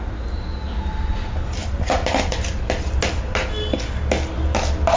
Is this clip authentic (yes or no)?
yes